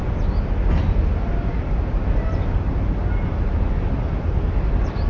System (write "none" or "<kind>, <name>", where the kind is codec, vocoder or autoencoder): none